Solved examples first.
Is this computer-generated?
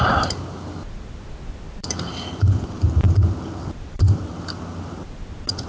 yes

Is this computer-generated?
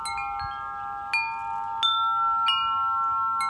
no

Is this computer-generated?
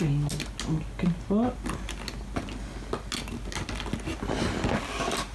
no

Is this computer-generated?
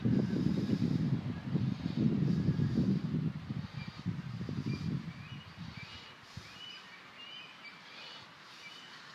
no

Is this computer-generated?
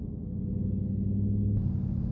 no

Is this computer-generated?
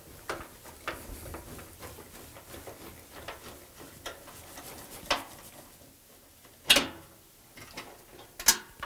no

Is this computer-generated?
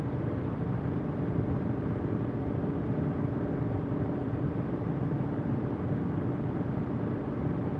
yes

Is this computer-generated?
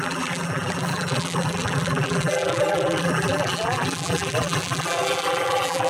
yes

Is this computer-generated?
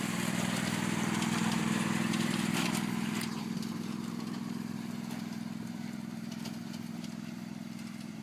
yes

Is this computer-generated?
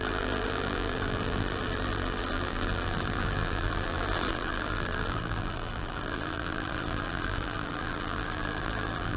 yes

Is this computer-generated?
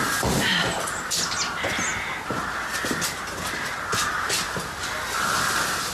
no